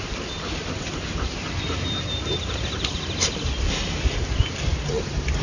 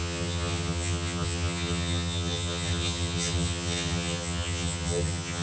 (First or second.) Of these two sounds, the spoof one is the second